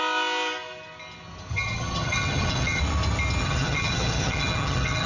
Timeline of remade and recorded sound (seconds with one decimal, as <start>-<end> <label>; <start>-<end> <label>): 0.0-1.5 recorded; 1.5-2.8 remade; 2.8-3.4 recorded; 3.4-5.1 remade